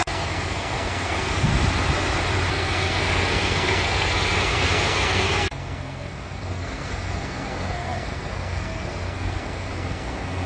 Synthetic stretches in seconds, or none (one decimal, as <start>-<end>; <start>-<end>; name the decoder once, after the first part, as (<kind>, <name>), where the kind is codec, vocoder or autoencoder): 0.0-1.5 (codec, SNAC); 2.5-10.5